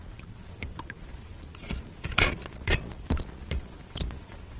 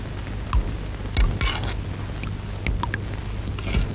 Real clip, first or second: second